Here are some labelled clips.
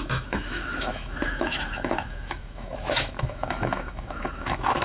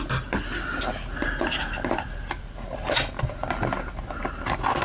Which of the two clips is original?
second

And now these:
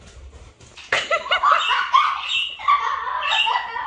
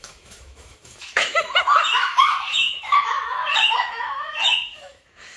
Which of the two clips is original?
first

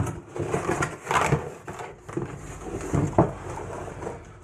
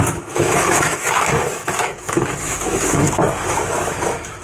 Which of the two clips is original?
first